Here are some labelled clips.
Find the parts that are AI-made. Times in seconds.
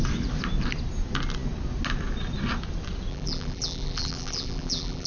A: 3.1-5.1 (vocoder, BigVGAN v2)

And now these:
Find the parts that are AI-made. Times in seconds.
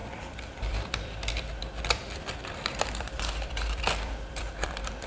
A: 0.0-5.1 (vocoder, BigVGAN v2)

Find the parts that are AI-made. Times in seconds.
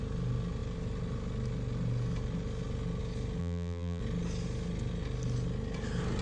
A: 3.4-4.0 (vocoder, BigVGAN v2)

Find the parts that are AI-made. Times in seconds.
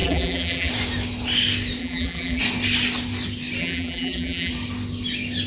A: 0.0-0.7 (vocoder, BigVGAN v2); 1.8-2.4; 3.6-4.5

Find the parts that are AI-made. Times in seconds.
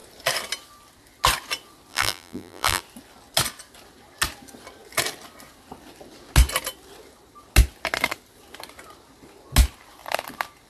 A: 1.9-2.8 (vocoder, BigVGAN v2)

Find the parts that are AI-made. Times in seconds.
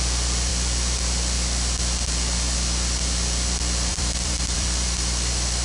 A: 0.0-0.5 (vocoder, BigVGAN v2); 3.9-5.6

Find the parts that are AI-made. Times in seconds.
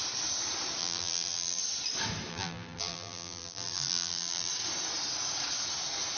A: 0.8-1.6 (vocoder, BigVGAN v2); 2.3-4.5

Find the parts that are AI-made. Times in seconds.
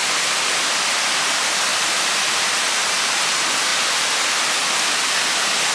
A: 0.0-1.0 (vocoder, BigVGAN v2); 1.7-3.1